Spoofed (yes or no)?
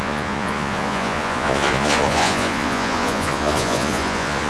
yes